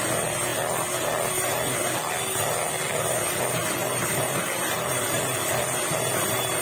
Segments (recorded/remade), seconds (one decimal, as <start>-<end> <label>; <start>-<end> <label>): 0.0-3.8 recorded; 3.8-5.2 remade; 5.2-6.6 recorded